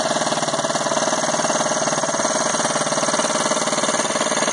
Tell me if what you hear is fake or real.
real